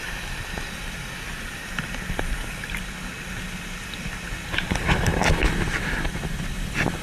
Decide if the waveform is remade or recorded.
recorded